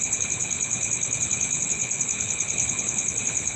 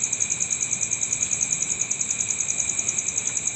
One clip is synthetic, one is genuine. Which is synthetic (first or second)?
first